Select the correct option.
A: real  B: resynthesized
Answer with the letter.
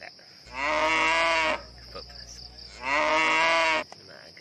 A